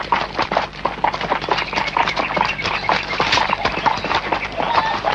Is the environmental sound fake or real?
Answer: real